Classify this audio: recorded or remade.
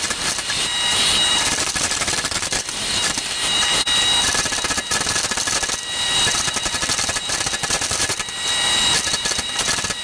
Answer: remade